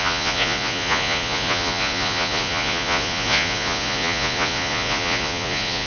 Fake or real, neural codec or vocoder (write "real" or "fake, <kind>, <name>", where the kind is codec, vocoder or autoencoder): fake, vocoder, Vocos